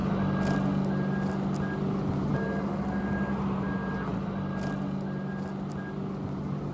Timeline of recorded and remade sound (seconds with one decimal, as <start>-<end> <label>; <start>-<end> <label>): 0.0-6.7 recorded